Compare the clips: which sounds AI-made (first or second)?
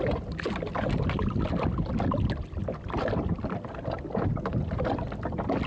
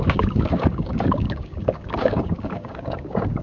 second